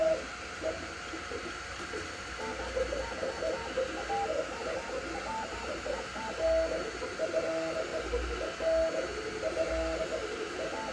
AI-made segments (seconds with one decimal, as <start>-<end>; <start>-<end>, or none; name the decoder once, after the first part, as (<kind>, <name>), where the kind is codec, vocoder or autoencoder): none